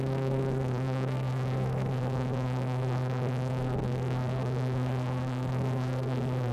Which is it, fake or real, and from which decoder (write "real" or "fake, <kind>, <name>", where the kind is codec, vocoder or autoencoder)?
fake, codec, SNAC